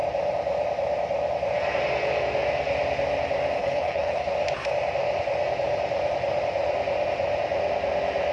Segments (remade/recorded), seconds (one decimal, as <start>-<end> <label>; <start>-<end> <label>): 0.0-3.6 recorded; 3.6-4.3 remade; 4.3-8.3 recorded